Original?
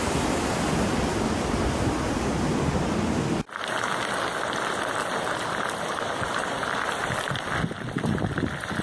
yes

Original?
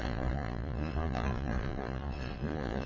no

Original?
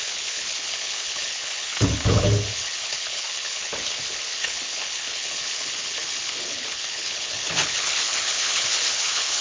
no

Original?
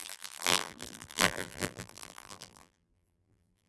no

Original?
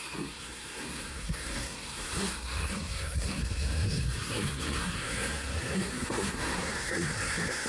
no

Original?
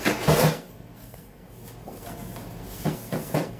no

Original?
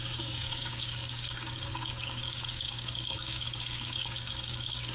no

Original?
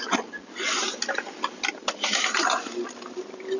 yes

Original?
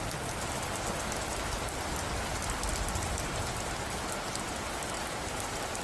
yes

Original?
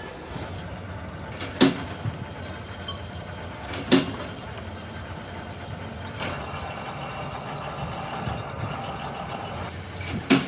yes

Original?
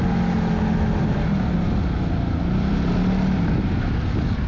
yes